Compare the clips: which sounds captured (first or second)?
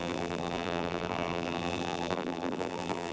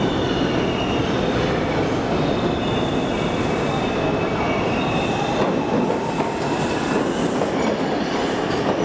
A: second